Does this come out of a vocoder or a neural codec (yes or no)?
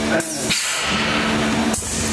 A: no